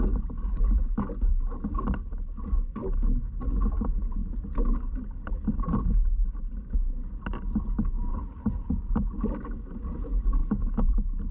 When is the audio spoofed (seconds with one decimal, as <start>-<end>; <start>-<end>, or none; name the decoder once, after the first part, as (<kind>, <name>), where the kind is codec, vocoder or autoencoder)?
8.1-8.7 (codec, HILCodec); 10.4-10.9